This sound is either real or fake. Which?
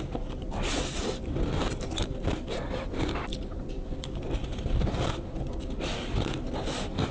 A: real